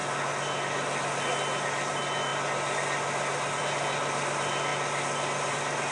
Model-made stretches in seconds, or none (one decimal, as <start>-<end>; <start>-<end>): none

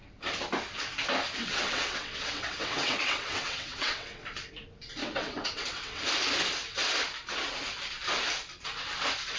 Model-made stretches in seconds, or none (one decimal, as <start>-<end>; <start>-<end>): 1.4-4.4; 5.0-6.0

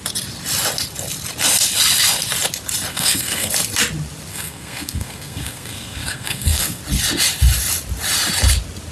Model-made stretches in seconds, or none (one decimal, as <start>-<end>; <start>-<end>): 2.9-3.5; 4.3-6.8